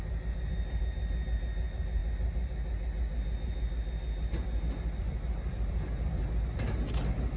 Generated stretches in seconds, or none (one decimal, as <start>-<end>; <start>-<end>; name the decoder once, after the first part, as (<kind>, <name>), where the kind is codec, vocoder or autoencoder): none